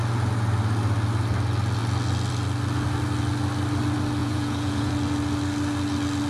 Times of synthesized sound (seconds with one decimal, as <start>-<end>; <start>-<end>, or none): 4.2-4.9